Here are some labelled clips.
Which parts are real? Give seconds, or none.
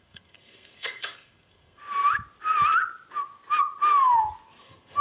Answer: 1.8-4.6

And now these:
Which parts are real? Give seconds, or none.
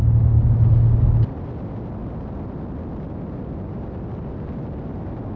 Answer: 0.0-5.4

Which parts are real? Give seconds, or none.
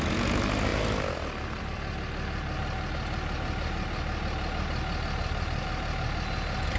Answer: 0.0-6.8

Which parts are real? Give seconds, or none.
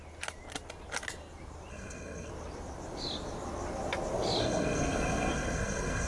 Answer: 0.0-1.7; 2.3-4.4